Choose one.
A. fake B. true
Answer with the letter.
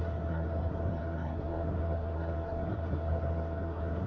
A